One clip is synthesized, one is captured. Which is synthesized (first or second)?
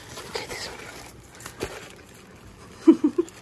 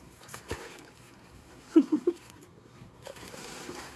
second